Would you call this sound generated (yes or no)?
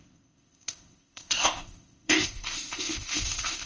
yes